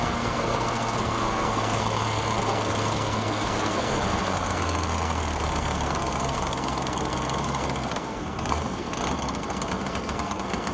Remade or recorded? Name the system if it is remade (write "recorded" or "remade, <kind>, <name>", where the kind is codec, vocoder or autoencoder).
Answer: remade, codec, SNAC